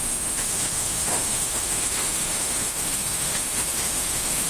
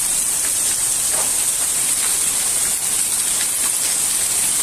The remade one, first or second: first